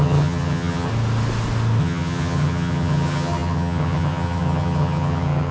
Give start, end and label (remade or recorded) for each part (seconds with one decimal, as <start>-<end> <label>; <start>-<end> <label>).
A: 0.0-0.9 remade; 0.9-1.8 recorded; 1.8-5.5 remade